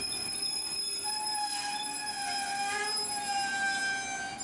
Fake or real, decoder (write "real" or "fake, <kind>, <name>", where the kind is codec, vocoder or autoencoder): real